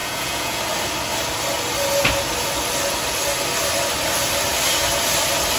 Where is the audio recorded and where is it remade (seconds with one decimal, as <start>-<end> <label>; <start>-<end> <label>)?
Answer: 0.0-0.6 remade; 0.6-5.6 recorded